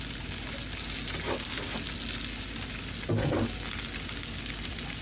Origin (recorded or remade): recorded